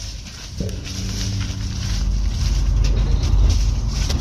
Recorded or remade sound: recorded